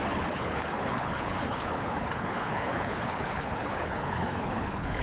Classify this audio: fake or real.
fake